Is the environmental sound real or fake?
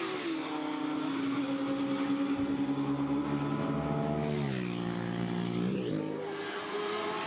real